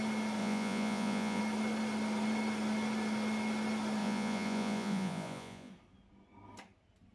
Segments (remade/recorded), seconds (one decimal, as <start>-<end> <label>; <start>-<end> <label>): 0.0-0.4 recorded; 0.4-1.4 remade; 1.4-4.0 recorded; 4.0-5.7 remade; 5.7-7.1 recorded